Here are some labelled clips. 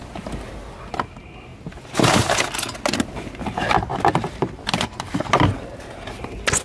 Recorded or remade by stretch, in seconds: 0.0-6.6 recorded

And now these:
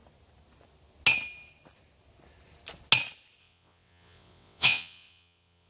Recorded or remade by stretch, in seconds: 0.0-3.4 recorded; 3.4-5.7 remade

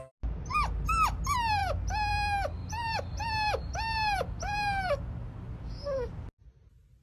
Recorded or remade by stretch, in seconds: 0.0-2.6 recorded; 2.6-5.7 remade; 5.7-7.0 recorded

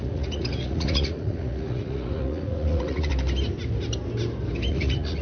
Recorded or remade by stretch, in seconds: 0.0-3.1 remade; 3.1-4.7 recorded; 4.7-5.2 remade

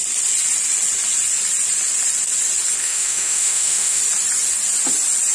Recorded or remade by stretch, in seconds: 0.0-2.8 recorded; 2.8-4.0 remade; 4.0-5.3 recorded

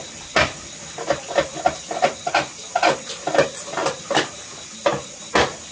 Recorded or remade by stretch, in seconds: 0.0-5.7 recorded